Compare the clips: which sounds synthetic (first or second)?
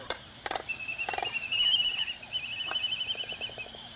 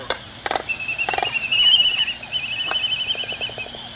first